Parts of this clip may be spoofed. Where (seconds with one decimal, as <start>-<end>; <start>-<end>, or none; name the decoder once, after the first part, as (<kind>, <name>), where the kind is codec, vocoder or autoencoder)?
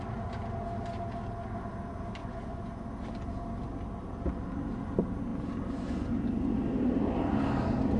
2.2-2.7 (vocoder, Vocos)